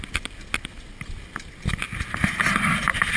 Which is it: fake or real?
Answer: real